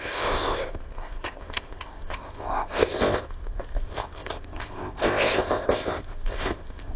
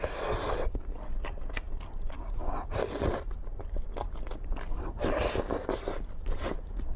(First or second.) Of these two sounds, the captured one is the second